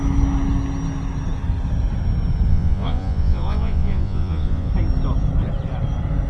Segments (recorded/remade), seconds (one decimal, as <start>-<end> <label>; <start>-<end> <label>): 0.0-2.5 recorded; 2.5-4.7 remade; 4.7-6.3 recorded